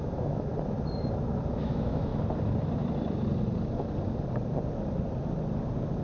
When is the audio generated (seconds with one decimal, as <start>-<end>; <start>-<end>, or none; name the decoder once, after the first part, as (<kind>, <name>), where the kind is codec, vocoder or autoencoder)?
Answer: 0.0-0.5 (autoencoder, DAC-VAE); 1.5-2.1